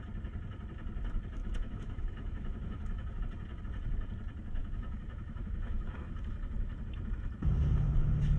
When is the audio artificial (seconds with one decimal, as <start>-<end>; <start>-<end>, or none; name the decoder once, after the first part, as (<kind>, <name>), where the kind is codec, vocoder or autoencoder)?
1.4-3.2 (autoencoder, DAC-VAE); 4.6-6.4